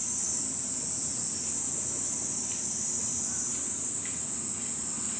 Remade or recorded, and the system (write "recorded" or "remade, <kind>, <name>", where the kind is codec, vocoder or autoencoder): recorded